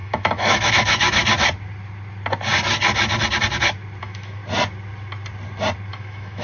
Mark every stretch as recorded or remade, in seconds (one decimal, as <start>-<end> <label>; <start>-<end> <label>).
0.0-1.2 remade; 1.2-4.0 recorded; 4.0-4.4 remade; 4.4-5.9 recorded; 5.9-6.4 remade